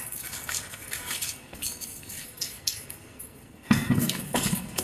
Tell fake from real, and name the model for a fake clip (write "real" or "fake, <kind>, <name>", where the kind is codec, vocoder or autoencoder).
fake, codec, SNAC